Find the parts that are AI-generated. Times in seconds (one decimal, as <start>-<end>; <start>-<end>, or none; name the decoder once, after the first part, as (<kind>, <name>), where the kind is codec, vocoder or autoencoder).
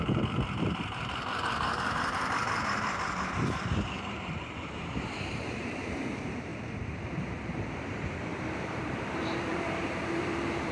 0.0-6.5 (vocoder, BigVGAN v2); 7.9-10.7